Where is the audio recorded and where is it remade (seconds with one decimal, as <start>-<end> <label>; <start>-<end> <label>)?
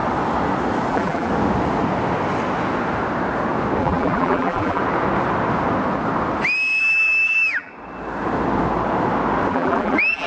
0.0-0.9 recorded; 0.9-1.3 remade; 1.3-3.8 recorded; 3.8-4.8 remade; 4.8-6.8 recorded; 6.8-7.7 remade; 7.7-9.5 recorded; 9.5-10.3 remade